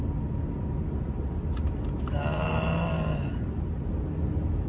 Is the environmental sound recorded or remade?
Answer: recorded